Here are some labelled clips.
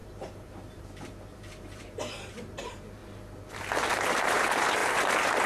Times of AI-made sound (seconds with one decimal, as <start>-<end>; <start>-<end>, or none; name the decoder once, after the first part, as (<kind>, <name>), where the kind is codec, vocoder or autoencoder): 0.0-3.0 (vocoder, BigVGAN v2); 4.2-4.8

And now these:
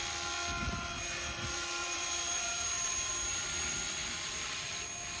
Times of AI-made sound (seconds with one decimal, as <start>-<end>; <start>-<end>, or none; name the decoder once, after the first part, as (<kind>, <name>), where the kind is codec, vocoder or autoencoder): 1.8-3.1 (vocoder, BigVGAN v2); 4.0-4.7

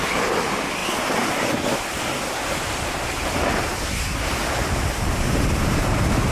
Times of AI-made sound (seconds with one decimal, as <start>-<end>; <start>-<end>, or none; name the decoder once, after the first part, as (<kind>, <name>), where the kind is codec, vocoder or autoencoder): none